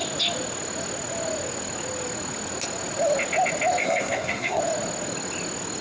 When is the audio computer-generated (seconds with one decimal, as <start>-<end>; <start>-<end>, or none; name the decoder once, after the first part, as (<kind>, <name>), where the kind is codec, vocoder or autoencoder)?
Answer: 3.8-4.6 (codec, SNAC)